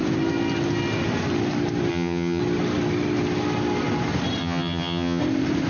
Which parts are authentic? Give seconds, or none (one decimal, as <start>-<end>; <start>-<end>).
0.0-1.9; 2.4-4.4; 5.2-5.7